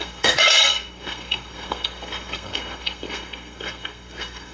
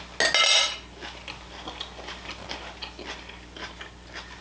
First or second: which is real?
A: second